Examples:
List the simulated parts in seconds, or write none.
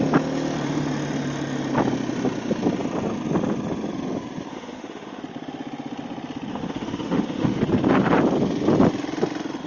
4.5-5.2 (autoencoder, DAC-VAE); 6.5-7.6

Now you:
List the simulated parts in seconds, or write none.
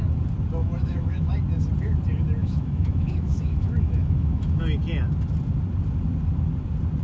0.6-1.3 (autoencoder, DAC-VAE); 2.4-4.6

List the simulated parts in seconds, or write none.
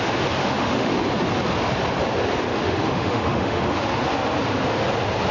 0.4-0.9 (autoencoder, DAC-VAE); 2.5-3.8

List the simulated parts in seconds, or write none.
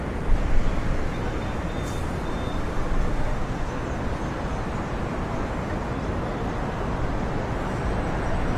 3.1-3.7 (autoencoder, DAC-VAE)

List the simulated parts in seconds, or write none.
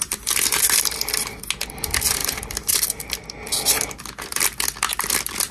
none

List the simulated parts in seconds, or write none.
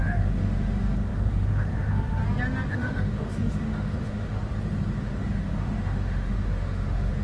0.0-2.2 (autoencoder, DAC-VAE); 2.7-4.4; 5.0-7.2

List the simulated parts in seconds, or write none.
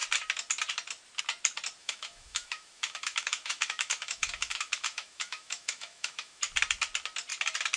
1.8-6.4 (autoencoder, DAC-VAE)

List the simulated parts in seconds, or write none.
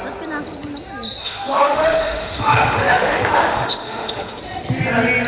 1.2-4.4 (autoencoder, DAC-VAE)